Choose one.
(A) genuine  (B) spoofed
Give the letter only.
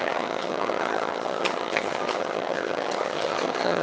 B